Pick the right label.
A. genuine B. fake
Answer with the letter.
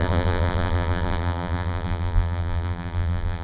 B